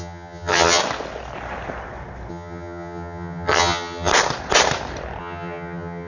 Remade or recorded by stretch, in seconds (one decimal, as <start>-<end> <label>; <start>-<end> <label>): 0.0-0.8 remade; 0.8-2.3 recorded; 2.3-4.1 remade; 4.1-5.2 recorded; 5.2-6.1 remade